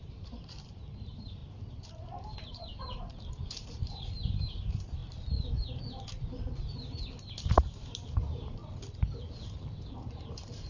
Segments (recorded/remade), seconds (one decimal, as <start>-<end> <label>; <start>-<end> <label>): 0.0-5.0 remade; 5.0-7.5 recorded; 7.5-8.6 remade; 8.6-10.1 recorded; 10.1-10.7 remade